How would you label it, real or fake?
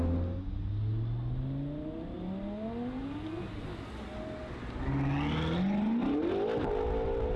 real